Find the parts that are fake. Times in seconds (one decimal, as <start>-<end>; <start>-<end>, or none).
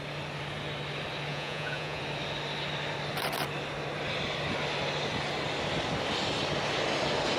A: 1.3-2.0